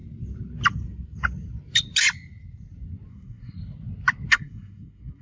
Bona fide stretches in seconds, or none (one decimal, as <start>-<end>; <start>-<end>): 0.0-3.1; 3.6-4.3